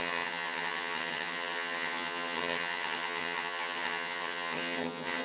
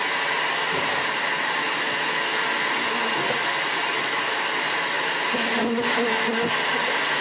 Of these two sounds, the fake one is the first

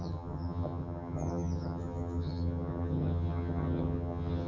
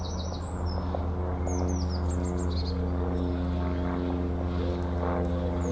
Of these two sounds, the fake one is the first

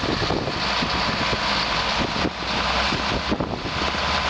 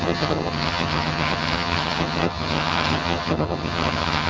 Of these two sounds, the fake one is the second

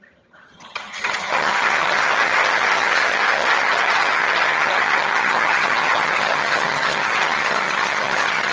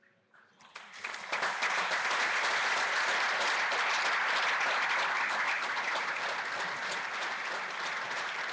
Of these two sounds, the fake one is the first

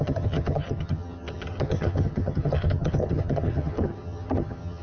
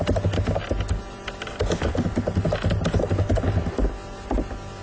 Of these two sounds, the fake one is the first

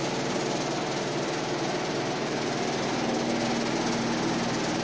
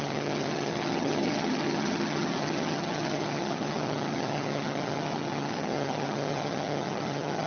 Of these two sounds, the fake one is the second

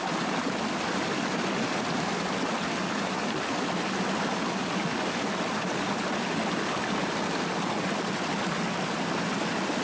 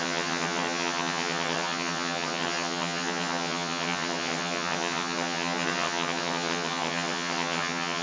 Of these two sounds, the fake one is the second